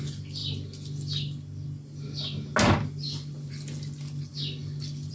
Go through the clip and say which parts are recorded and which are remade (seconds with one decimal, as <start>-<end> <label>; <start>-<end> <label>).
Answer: 0.0-5.1 recorded